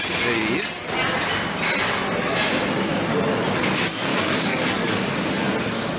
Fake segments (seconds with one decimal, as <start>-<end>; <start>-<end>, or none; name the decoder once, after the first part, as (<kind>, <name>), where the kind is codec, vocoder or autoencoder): 4.1-5.1 (codec, DAC)